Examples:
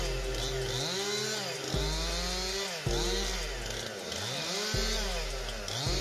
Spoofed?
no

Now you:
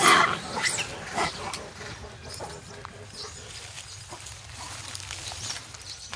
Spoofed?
no